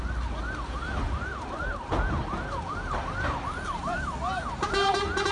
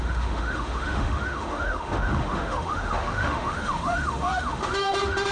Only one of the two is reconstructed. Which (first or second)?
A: second